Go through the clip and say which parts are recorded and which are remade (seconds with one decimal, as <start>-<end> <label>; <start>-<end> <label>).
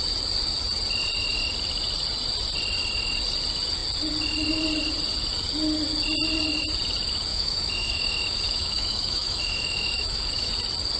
0.0-7.3 recorded; 7.3-10.5 remade; 10.5-11.0 recorded